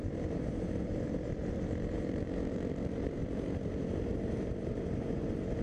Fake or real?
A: fake